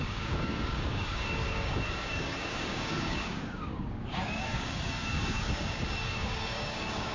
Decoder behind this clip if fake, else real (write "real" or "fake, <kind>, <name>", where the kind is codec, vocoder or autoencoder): fake, codec, DAC